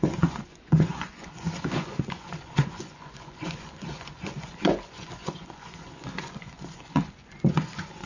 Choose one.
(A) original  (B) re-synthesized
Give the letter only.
B